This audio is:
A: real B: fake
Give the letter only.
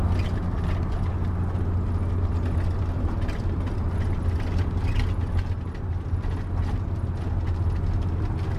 A